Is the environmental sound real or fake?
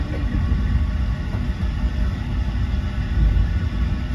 real